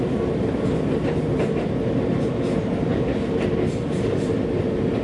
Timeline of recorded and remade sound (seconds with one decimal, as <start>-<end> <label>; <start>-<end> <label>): 0.0-5.0 recorded